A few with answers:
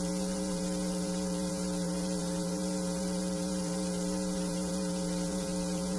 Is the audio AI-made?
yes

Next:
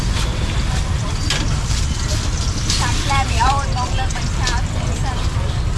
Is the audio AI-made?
yes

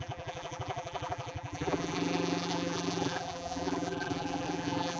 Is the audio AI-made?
yes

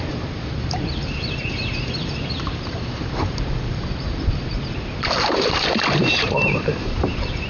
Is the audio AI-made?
yes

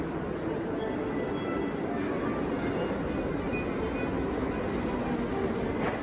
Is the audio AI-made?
no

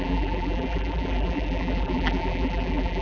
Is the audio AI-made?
yes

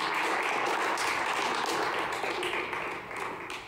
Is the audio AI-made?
no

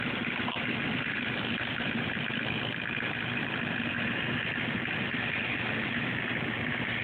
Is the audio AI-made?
yes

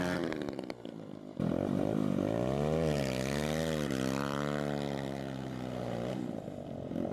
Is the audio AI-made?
no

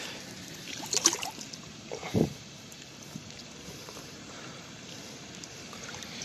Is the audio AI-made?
yes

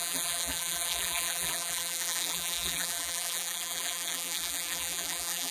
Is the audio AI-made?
yes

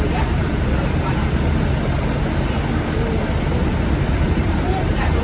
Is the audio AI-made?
yes